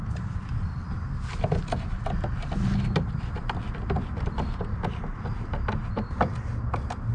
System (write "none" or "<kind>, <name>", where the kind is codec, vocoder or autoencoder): none